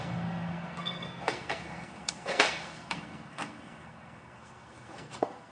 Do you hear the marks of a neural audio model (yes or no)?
yes